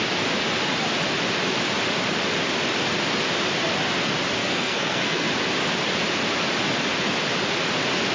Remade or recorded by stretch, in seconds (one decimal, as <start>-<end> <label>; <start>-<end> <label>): 0.0-4.4 recorded; 4.4-5.3 remade; 5.3-8.1 recorded